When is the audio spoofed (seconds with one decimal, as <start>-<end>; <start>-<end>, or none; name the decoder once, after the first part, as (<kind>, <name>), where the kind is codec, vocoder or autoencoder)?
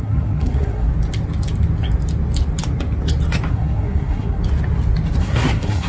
0.0-0.9 (codec, SNAC); 3.5-4.4; 5.2-5.9